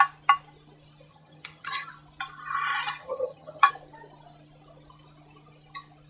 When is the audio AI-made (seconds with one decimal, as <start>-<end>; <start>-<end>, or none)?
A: 1.1-1.9; 3.0-3.7